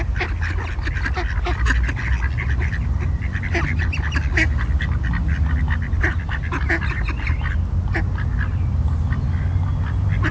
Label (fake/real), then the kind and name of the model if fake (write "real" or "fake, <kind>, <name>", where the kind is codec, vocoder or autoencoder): real